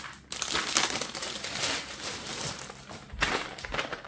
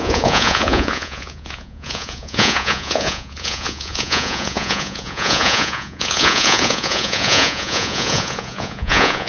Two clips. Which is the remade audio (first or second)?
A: second